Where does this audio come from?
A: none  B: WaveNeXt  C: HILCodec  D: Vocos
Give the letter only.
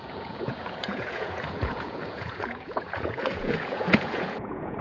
D